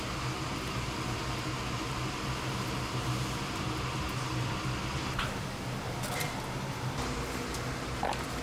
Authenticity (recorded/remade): recorded